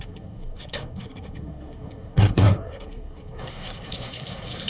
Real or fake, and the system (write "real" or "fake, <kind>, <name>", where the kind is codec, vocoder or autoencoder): fake, codec, SNAC